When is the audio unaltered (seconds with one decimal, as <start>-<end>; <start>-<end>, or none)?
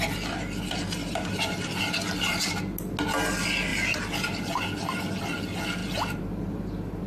0.0-1.0; 1.8-3.7; 4.6-7.1